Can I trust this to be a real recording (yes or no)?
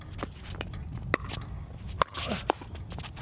yes